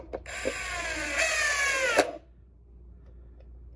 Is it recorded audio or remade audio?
recorded